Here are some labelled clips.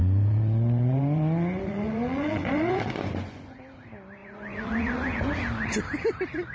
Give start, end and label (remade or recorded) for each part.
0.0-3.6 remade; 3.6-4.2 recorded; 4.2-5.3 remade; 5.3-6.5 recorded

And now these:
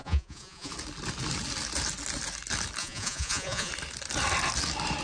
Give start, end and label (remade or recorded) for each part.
0.0-0.7 remade; 0.7-2.8 recorded; 2.8-3.7 remade; 3.7-5.0 recorded

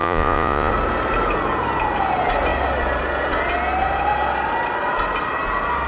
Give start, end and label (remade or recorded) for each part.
0.0-0.7 remade; 0.7-5.9 recorded

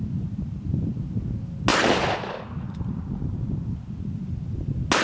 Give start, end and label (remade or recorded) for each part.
0.0-5.0 recorded

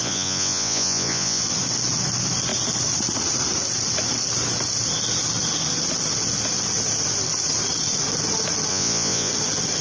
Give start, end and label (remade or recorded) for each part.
0.0-1.4 remade; 1.4-8.7 recorded; 8.7-9.3 remade; 9.3-9.8 recorded